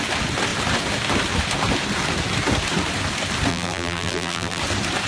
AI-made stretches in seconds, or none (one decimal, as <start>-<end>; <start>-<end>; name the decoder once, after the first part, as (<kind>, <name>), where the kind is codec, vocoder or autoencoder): 3.5-4.6 (vocoder, BigVGAN v2)